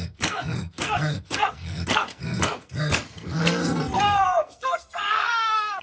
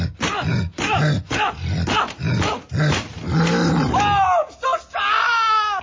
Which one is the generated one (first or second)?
first